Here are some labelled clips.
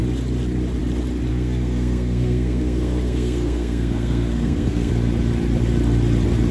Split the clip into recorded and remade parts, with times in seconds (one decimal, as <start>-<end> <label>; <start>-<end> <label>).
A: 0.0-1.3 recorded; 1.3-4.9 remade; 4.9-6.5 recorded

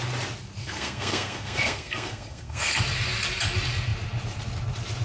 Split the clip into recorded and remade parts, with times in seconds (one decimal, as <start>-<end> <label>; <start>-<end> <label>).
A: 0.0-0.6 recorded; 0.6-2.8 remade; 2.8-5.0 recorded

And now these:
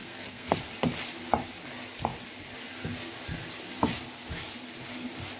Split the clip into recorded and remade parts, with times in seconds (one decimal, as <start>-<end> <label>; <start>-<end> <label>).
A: 0.0-0.6 remade; 0.6-5.4 recorded

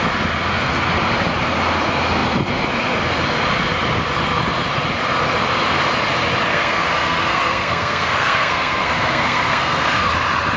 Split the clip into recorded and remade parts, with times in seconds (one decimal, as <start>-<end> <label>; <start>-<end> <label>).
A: 0.0-6.5 recorded; 6.5-10.1 remade; 10.1-10.6 recorded

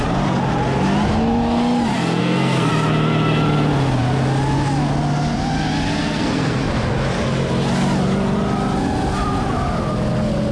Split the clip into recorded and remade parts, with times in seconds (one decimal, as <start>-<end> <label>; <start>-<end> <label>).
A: 0.0-2.2 recorded; 2.2-2.7 remade; 2.7-6.0 recorded; 6.0-6.6 remade; 6.6-10.5 recorded